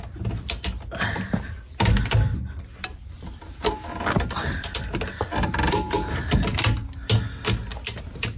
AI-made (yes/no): no